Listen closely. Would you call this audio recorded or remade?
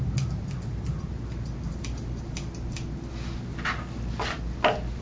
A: recorded